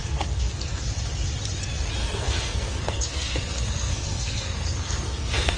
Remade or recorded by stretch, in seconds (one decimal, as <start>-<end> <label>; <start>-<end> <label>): 0.0-0.8 remade; 0.8-2.0 recorded; 2.0-5.6 remade